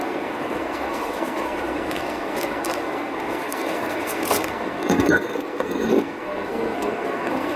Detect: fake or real fake